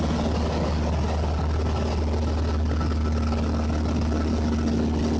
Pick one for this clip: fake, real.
real